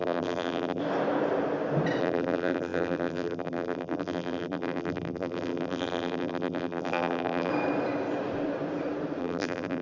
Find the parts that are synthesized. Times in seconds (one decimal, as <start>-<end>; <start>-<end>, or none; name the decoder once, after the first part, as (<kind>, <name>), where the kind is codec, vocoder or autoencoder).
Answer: 0.0-0.8 (vocoder, BigVGAN v2); 2.0-7.5; 9.2-9.8